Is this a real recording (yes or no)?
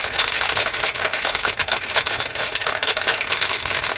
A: no